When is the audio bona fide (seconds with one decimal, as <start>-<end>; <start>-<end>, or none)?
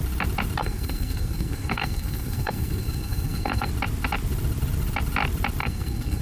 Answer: 0.0-0.6; 3.7-5.6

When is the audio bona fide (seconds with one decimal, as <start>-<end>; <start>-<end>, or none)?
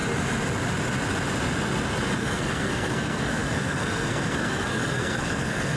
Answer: 0.0-2.2